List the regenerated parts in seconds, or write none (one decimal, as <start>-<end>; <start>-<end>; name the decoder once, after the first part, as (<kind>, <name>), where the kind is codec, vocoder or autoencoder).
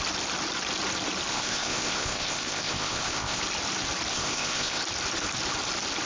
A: 1.3-3.4 (codec, ZipCodec); 4.1-4.8